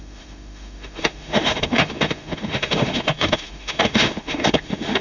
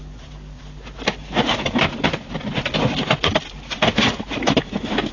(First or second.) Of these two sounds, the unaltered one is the second